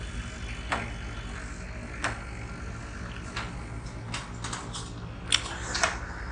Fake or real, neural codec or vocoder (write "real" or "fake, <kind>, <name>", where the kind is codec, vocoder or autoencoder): real